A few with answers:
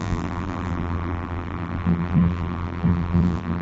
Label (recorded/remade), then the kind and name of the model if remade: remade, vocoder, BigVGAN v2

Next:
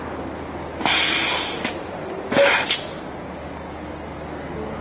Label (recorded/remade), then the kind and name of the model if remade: recorded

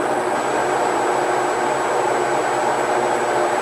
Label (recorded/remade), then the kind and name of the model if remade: recorded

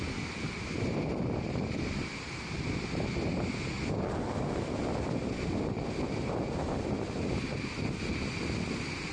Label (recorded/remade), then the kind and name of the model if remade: recorded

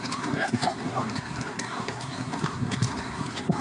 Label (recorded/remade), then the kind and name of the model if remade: remade, codec, SNAC